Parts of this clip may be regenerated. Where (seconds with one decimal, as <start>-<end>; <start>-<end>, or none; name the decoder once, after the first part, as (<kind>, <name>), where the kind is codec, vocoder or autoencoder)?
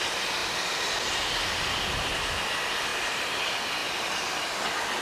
0.4-1.0 (vocoder, BigVGAN v2); 2.9-3.4; 3.8-4.6